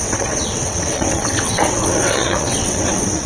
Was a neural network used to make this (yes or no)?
yes